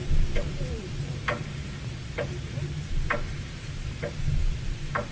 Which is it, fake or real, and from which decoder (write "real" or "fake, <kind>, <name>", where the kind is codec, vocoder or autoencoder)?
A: fake, vocoder, BigVGAN v2